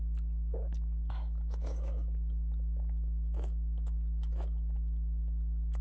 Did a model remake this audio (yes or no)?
yes